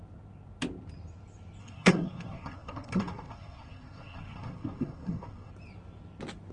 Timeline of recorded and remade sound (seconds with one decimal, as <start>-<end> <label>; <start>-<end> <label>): 0.0-1.6 recorded; 1.6-5.5 remade; 5.5-6.5 recorded

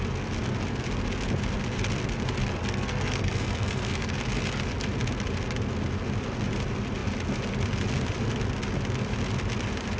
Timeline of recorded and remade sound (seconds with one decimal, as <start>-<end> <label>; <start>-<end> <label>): 0.0-2.6 recorded; 2.6-4.1 remade; 4.1-10.0 recorded

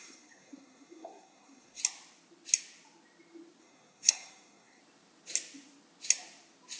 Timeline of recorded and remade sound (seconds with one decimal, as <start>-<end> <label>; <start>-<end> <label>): 0.0-1.8 remade; 1.8-3.6 recorded; 3.6-4.8 remade; 4.8-6.8 recorded

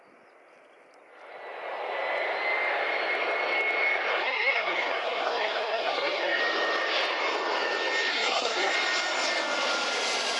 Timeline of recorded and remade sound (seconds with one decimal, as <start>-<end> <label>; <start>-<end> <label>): 0.0-4.1 recorded; 4.1-6.4 remade; 6.4-8.1 recorded; 8.1-8.7 remade; 8.7-10.4 recorded

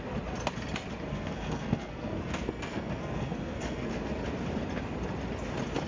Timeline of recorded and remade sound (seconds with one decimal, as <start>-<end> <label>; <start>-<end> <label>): 0.0-1.1 recorded; 1.1-3.9 remade; 3.9-5.9 recorded

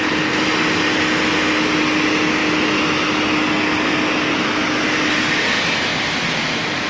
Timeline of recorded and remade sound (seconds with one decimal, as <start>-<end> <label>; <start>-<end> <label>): 0.0-6.9 recorded